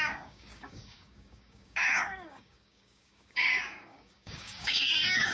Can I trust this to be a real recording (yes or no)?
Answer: no